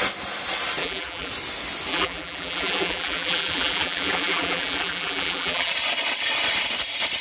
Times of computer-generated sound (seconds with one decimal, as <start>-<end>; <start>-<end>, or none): 0.8-1.3; 1.9-5.7